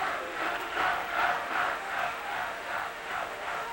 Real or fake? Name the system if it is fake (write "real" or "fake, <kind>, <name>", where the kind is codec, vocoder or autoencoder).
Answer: fake, autoencoder, DAC-VAE